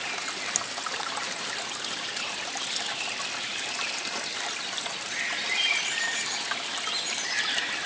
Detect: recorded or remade recorded